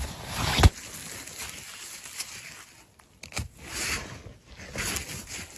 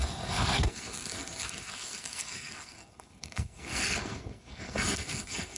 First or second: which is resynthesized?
second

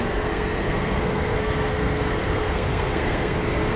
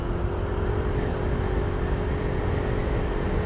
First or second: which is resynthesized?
first